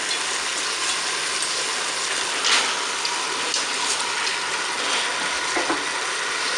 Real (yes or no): yes